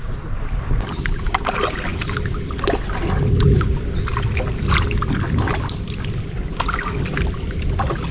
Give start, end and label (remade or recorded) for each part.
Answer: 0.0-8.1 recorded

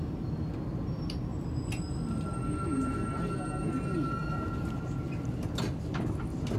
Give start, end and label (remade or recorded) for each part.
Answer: 0.0-6.6 recorded

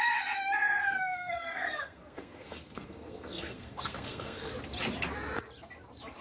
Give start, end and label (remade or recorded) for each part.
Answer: 0.0-0.8 recorded; 0.8-4.5 remade; 4.5-6.2 recorded

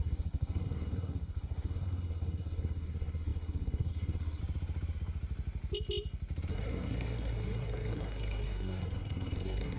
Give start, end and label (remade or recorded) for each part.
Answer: 0.0-4.4 remade; 4.4-6.5 recorded; 6.5-9.8 remade

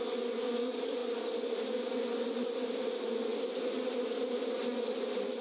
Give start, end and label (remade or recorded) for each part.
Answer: 0.0-5.4 recorded

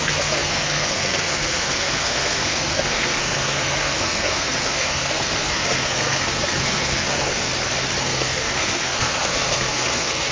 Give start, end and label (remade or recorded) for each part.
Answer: 0.0-7.5 remade; 7.5-8.0 recorded; 8.0-10.3 remade